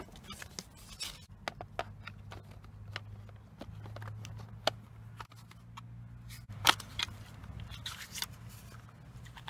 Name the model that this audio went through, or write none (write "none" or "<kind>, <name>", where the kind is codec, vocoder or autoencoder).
none